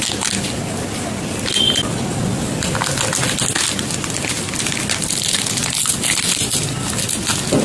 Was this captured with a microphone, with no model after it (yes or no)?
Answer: yes